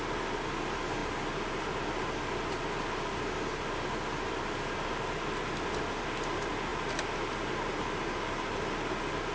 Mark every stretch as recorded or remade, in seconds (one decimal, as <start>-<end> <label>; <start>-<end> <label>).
0.0-9.3 recorded